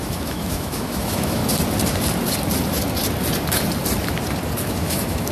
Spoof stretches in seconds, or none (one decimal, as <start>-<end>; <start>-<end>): 0.0-1.4; 4.6-5.3